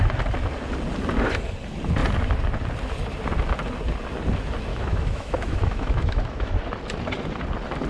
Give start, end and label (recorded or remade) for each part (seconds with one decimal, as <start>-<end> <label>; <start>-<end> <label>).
0.0-4.7 recorded; 4.7-6.5 remade; 6.5-7.9 recorded